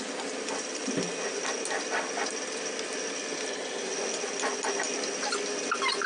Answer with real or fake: real